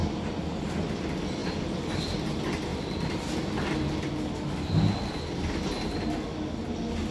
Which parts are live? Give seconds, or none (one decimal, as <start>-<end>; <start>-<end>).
0.0-2.7; 3.5-7.1

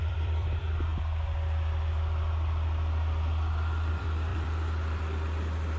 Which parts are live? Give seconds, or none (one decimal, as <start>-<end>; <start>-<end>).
0.9-3.9

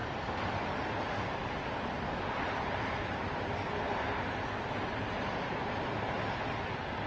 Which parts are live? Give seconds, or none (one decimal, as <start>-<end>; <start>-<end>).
0.6-7.1

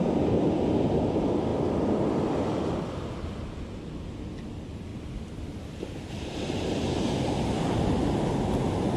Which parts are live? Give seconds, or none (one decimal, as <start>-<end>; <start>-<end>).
0.0-9.0

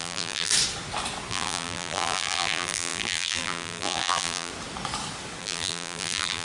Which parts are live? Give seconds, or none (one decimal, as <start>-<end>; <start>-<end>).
0.5-1.3; 4.5-5.4

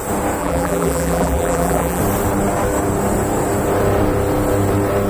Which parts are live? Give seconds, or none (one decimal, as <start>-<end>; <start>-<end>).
0.0-0.4; 2.0-5.1

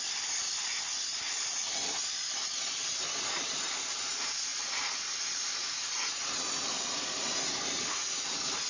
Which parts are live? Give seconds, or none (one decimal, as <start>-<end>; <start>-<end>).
none